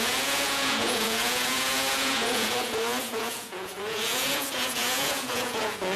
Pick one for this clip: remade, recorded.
remade